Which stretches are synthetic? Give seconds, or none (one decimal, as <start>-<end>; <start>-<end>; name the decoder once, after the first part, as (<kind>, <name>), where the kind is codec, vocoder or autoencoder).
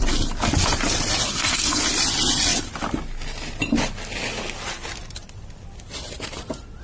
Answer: 1.3-1.8 (codec, SNAC)